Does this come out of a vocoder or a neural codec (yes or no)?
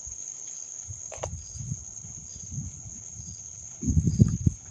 yes